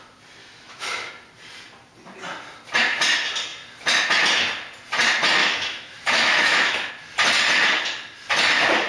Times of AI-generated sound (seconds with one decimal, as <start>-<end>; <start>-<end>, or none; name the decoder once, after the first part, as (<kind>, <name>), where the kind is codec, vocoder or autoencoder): 0.4-1.1 (autoencoder, DAC-VAE); 5.4-6.9